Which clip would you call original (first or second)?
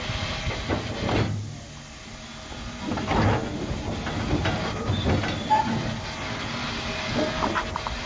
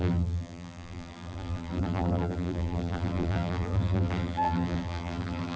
first